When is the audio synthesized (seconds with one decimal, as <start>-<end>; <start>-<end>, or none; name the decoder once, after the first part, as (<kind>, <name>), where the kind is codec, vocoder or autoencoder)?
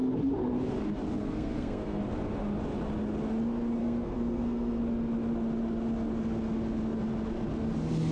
1.2-2.0 (codec, SNAC); 3.8-4.8